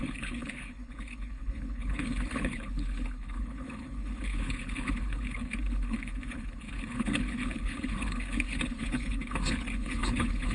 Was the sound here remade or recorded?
remade